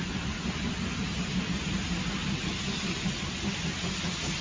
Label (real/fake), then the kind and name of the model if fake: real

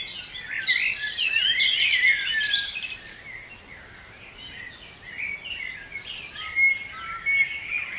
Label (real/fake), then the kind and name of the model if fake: real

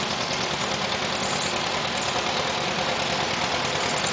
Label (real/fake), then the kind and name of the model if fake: real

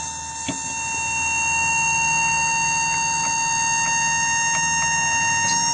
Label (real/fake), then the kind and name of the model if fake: real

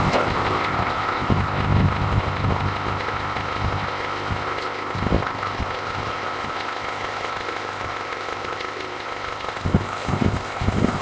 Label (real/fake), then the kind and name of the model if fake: fake, codec, ZipCodec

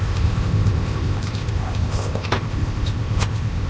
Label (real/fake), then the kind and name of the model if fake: fake, codec, ZipCodec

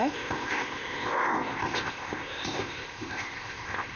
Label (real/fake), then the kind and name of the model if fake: fake, codec, ZipCodec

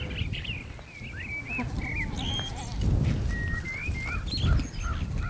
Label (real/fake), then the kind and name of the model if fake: real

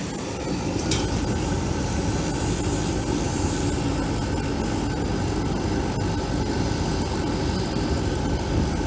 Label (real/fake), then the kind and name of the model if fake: real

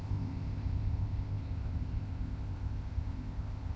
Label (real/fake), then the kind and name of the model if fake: fake, codec, ZipCodec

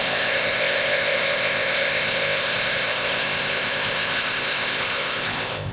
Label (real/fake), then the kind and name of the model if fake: fake, codec, ZipCodec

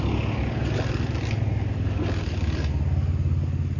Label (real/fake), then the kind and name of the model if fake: real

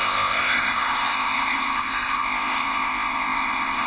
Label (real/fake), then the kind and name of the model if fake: fake, codec, ZipCodec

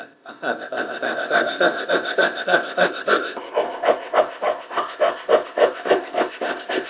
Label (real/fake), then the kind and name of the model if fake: fake, codec, ZipCodec